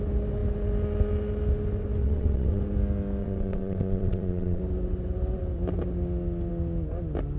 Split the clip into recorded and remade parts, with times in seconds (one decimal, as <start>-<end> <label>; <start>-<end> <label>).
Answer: 0.0-2.0 recorded; 2.0-2.6 remade; 2.6-3.2 recorded; 3.2-4.6 remade; 4.6-7.4 recorded